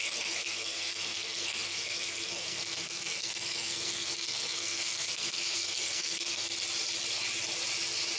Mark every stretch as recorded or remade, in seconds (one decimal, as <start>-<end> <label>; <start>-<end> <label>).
0.0-6.5 remade; 6.5-8.2 recorded